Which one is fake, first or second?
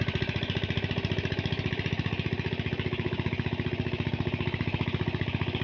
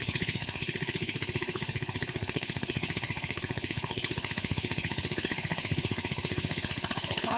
second